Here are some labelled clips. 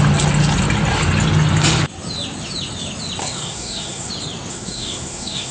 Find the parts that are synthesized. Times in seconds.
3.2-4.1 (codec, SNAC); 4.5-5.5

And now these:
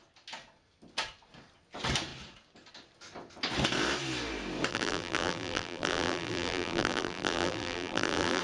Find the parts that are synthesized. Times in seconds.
4.7-8.4 (vocoder, BigVGAN v2)

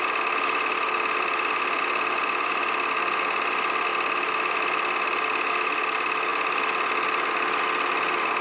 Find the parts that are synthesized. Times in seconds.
none

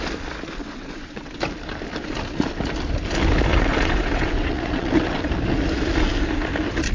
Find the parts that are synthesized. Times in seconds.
0.6-1.4 (vocoder, WaveNeXt); 3.5-5.3

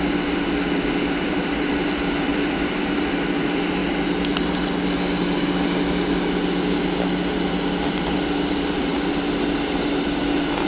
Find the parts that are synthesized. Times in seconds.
0.0-3.8 (vocoder, BigVGAN v2); 7.9-8.9; 9.5-10.7

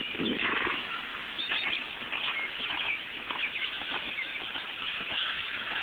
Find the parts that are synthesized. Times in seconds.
0.0-1.1 (autoencoder, DAC-VAE); 2.6-4.3; 4.8-5.8